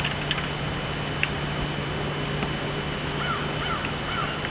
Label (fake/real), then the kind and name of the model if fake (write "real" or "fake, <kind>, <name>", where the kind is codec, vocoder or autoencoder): real